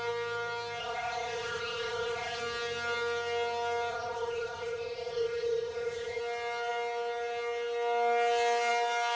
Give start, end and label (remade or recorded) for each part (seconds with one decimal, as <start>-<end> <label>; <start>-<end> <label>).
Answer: 0.0-0.8 recorded; 0.8-2.4 remade; 2.4-3.9 recorded; 3.9-6.2 remade; 6.2-9.2 recorded